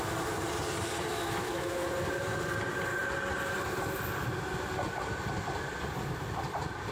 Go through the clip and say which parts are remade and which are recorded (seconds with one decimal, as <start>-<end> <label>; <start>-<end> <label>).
0.0-1.1 recorded; 1.1-1.7 remade; 1.7-6.9 recorded